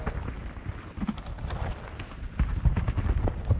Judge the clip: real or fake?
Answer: real